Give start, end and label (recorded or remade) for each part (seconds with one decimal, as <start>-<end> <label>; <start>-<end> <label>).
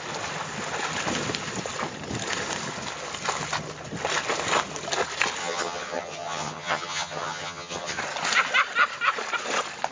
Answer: 0.0-5.4 recorded; 5.4-8.0 remade; 8.0-9.9 recorded